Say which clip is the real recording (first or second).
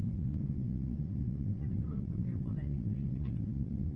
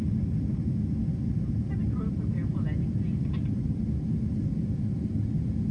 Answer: second